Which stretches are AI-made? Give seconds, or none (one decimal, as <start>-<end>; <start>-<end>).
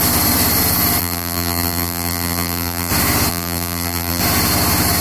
1.0-2.9; 3.3-4.2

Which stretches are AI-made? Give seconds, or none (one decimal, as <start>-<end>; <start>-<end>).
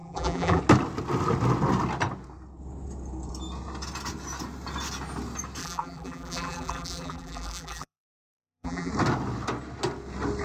0.0-0.6; 5.6-8.9